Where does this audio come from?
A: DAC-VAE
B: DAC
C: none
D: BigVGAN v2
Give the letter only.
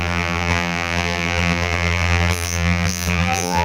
D